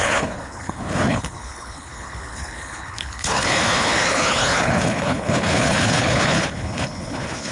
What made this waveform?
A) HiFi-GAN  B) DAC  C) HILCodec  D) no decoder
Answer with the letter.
C